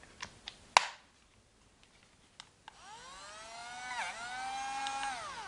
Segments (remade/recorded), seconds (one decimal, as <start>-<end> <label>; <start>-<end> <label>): 0.0-5.5 recorded